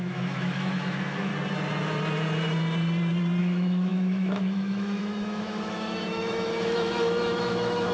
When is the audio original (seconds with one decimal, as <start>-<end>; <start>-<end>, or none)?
1.3-3.4